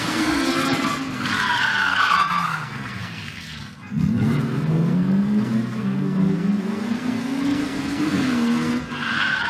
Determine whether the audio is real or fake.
fake